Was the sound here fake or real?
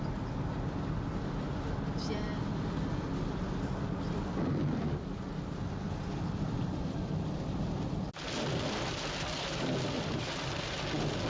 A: real